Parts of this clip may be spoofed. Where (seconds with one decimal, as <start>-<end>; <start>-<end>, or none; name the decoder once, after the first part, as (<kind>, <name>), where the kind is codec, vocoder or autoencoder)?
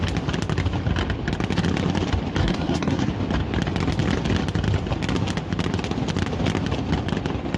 2.4-3.1 (codec, SNAC)